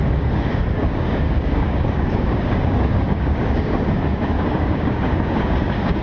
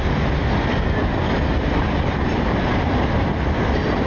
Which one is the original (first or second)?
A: second